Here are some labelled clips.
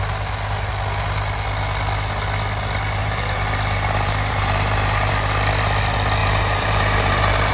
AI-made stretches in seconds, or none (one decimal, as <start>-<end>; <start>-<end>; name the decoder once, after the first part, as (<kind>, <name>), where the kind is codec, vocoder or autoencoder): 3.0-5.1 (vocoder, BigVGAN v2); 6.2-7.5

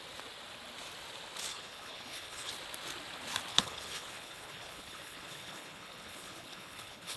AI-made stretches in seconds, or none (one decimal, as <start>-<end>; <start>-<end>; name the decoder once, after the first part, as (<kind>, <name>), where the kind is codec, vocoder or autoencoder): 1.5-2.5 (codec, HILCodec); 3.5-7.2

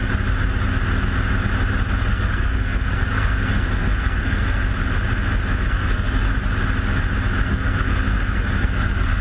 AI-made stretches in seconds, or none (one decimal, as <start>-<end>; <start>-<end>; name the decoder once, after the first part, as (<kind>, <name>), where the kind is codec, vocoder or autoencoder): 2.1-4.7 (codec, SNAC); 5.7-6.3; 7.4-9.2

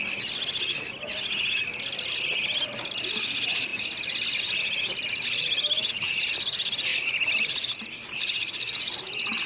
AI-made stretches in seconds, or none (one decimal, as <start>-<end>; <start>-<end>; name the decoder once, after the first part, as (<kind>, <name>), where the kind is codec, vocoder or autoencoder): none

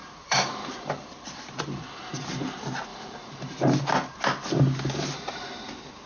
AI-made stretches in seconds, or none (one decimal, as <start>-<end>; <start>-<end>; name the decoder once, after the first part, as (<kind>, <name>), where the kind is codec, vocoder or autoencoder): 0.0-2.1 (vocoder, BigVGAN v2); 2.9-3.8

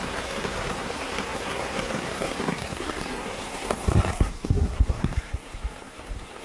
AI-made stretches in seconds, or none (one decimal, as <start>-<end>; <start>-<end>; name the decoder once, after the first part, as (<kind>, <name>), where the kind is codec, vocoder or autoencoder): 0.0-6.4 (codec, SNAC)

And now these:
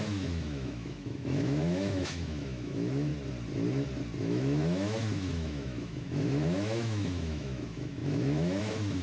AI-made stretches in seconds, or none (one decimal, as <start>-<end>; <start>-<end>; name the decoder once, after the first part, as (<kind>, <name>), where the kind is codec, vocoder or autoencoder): 0.0-3.1 (autoencoder, DAC-VAE); 4.2-9.0

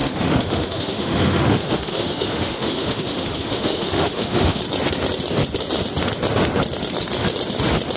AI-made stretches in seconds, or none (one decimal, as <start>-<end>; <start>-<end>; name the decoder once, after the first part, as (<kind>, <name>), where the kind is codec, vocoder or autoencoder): 0.0-4.6 (autoencoder, DAC-VAE)